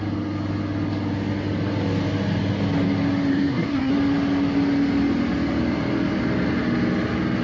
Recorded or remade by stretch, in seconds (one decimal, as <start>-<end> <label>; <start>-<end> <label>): 0.0-3.3 recorded; 3.3-3.9 remade; 3.9-7.4 recorded